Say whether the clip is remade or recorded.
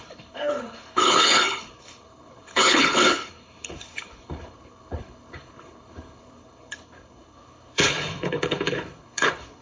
remade